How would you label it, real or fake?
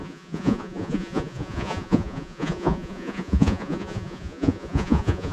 fake